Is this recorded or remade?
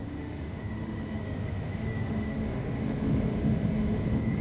remade